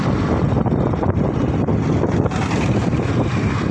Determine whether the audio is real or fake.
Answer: real